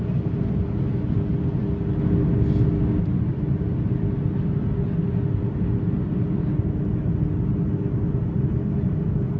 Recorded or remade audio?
recorded